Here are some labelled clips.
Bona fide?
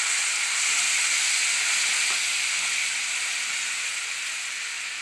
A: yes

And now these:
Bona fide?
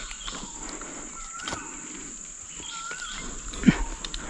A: yes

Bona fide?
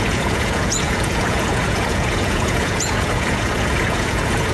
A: no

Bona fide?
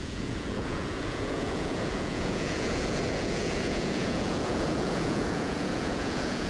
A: no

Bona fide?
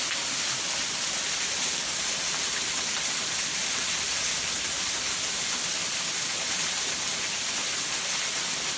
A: yes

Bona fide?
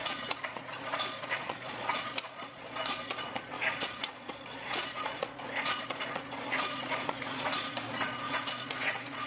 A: no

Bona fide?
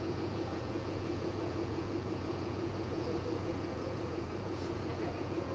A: no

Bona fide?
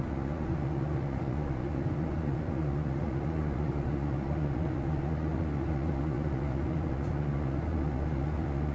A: no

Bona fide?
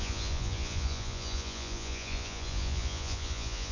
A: no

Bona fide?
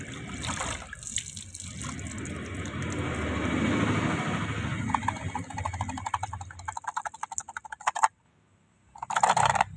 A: yes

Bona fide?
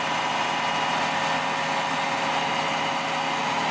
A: yes